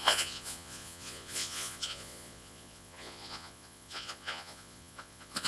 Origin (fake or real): fake